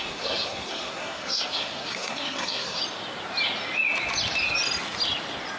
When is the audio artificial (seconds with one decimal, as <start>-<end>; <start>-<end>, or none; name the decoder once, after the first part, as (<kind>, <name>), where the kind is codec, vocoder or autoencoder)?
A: 0.0-2.8 (codec, SNAC)